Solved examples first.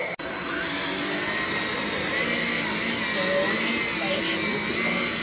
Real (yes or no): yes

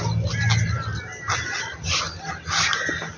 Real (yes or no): yes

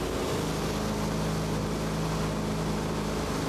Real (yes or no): yes